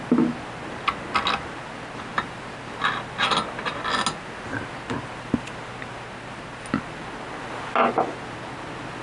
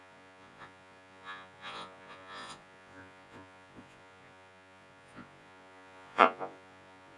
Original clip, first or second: first